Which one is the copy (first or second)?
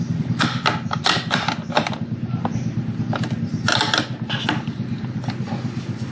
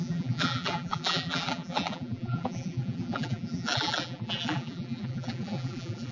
second